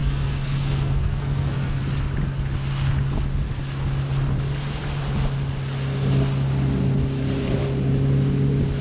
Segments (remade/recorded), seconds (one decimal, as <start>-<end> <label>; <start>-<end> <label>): 0.0-1.8 remade; 1.8-8.8 recorded